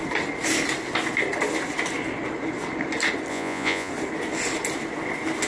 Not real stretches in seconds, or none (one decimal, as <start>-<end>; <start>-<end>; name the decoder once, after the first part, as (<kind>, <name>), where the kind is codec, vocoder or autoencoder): 3.3-3.9 (vocoder, Vocos)